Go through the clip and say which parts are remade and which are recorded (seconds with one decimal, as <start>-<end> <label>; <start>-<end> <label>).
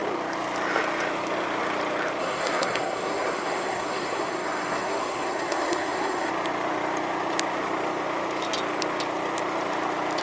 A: 0.0-2.2 recorded; 2.2-6.3 remade; 6.3-10.2 recorded